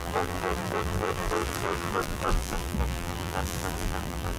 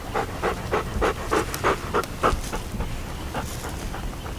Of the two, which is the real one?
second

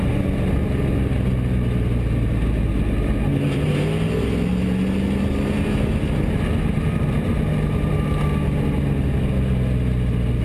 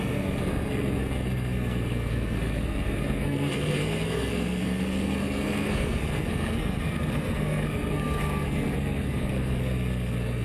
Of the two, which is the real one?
first